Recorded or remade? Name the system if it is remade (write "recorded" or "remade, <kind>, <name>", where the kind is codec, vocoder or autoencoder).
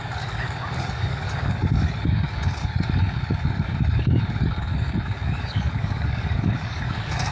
remade, codec, DAC